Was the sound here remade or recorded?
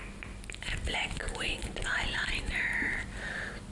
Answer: recorded